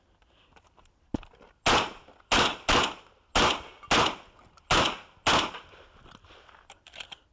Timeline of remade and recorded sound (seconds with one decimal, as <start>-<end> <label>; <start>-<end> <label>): 0.0-7.3 recorded

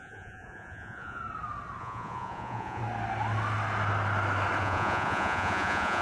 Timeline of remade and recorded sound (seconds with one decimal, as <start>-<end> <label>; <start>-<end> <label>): 0.0-1.2 remade; 1.2-1.8 recorded; 1.8-2.8 remade; 2.8-4.6 recorded; 4.6-6.0 remade

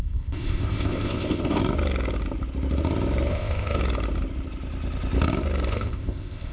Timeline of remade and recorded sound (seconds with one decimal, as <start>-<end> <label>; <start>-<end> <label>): 0.0-1.6 remade; 1.6-3.3 recorded; 3.3-3.8 remade; 3.8-5.7 recorded; 5.7-6.5 remade